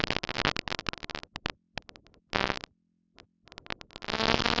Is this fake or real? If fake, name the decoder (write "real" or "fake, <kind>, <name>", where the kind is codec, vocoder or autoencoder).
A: real